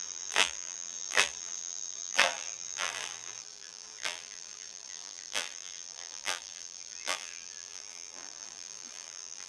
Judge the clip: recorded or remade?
remade